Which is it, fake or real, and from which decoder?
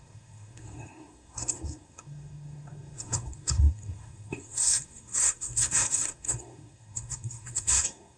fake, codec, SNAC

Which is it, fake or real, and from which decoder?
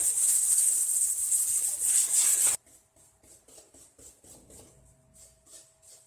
real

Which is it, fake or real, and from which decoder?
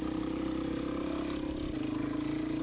real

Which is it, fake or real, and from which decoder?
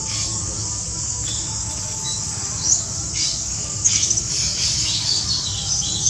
fake, codec, DAC